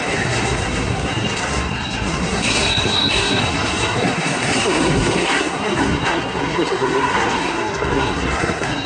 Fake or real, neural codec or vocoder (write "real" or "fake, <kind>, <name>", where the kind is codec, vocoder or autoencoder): fake, codec, SNAC